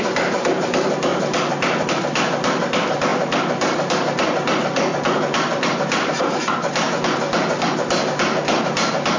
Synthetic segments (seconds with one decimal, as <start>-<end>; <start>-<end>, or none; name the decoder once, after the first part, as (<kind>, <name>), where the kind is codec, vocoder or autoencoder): none